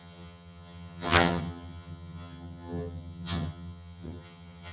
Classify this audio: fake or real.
fake